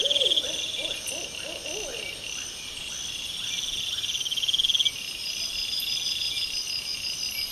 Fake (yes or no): no